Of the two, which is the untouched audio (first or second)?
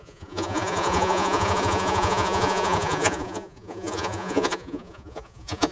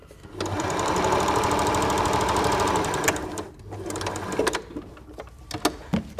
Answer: second